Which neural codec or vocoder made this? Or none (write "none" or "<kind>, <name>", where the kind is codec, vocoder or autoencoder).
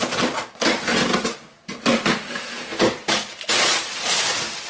none